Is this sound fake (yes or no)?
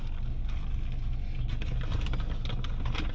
no